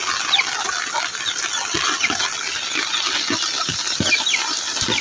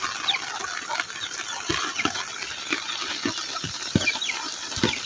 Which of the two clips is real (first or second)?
first